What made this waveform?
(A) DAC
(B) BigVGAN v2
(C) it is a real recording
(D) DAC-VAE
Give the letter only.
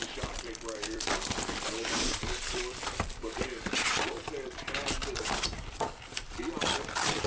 B